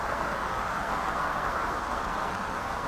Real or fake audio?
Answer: fake